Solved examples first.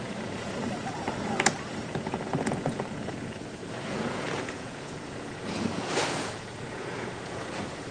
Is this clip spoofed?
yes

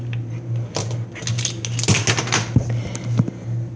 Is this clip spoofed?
no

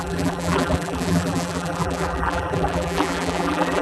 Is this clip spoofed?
yes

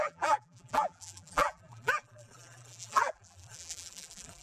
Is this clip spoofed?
yes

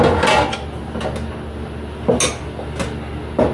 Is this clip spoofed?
no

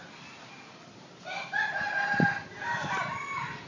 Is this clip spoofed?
no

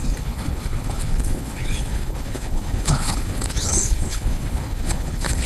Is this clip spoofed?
yes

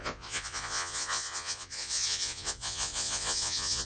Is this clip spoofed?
yes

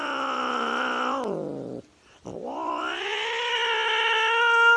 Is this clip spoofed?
no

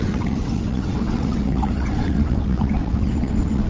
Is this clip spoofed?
yes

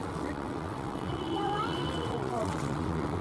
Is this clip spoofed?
yes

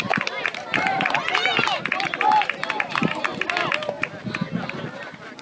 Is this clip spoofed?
no